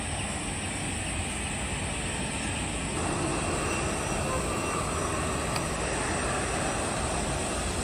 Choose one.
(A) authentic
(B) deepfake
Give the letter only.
A